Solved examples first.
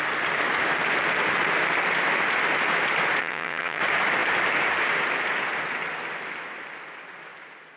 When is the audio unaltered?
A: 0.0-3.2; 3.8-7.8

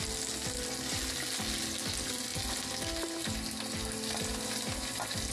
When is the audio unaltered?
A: 0.0-5.3

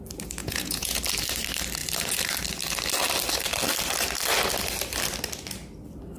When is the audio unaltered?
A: 0.0-0.4; 1.0-6.2

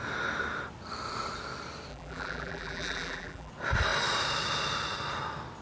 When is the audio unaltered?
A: 0.0-1.9; 3.5-5.6

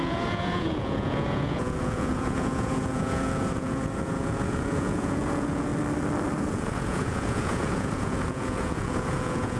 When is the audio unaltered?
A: 5.7-6.4